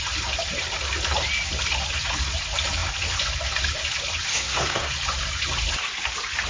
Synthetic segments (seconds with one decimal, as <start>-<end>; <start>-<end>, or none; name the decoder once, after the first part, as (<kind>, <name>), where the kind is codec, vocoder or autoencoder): 4.3-4.9 (codec, SNAC)